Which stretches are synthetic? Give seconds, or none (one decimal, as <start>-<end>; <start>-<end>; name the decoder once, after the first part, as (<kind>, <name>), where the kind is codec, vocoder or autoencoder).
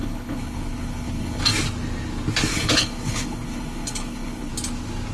0.0-1.4 (codec, HILCodec); 2.5-4.5